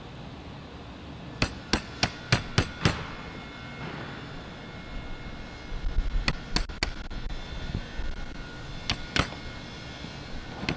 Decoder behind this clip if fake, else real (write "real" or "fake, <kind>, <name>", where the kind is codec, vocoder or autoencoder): real